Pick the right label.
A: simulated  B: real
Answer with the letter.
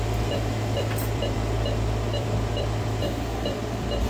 A